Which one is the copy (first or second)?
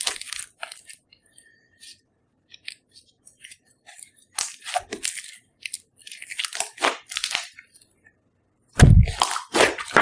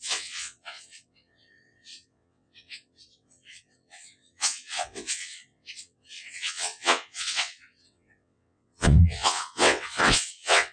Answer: second